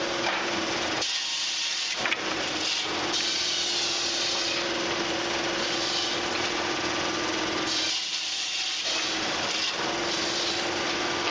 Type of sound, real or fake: real